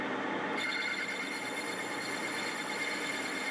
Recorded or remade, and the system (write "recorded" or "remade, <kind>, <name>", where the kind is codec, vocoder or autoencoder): recorded